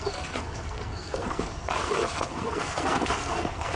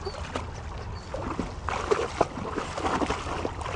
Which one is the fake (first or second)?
first